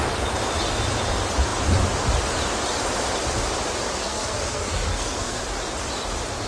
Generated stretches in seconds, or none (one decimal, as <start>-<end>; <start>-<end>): 4.0-5.4

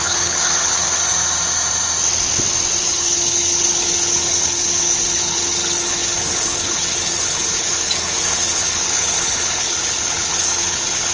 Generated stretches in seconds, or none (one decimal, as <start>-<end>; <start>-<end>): 0.0-1.0; 2.8-11.1

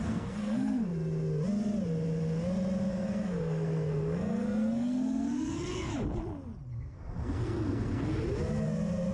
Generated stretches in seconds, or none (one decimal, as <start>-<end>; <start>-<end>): 0.0-0.9; 2.9-5.9; 6.7-8.1

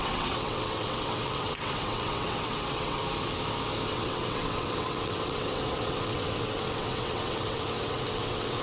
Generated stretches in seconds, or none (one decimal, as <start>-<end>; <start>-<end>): 0.0-3.0; 3.9-8.6

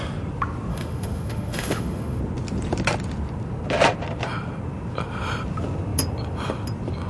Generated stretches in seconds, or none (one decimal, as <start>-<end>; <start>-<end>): 0.7-2.2